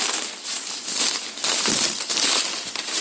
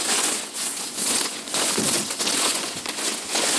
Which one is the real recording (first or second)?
first